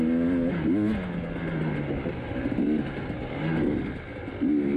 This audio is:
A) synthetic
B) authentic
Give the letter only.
B